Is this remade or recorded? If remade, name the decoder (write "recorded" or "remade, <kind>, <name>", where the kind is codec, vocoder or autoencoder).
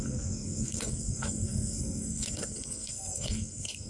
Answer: remade, codec, SNAC